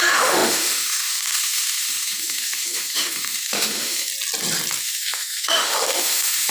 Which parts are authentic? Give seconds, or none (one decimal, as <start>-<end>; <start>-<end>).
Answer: 4.1-4.8